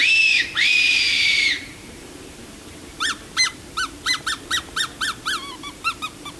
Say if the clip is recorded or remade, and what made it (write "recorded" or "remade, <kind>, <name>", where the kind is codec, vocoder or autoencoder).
remade, vocoder, BigVGAN v2